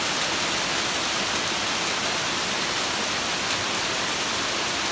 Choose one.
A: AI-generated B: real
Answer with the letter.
B